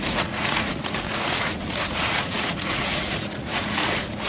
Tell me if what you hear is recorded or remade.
remade